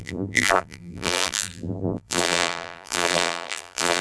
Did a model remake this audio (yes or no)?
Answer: yes